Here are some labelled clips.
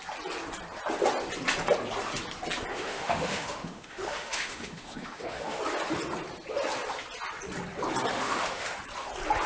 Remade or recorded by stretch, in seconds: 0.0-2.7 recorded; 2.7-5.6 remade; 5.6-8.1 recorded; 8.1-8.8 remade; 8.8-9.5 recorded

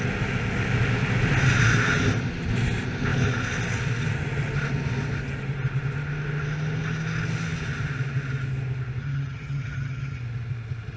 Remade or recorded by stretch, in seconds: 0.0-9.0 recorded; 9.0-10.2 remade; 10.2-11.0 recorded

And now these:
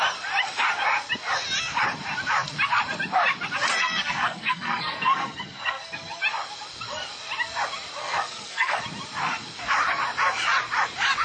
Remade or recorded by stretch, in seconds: 0.0-3.8 recorded; 3.8-6.2 remade; 6.2-8.0 recorded; 8.0-8.8 remade; 8.8-11.2 recorded

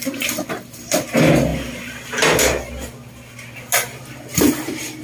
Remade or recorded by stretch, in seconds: 0.0-5.0 recorded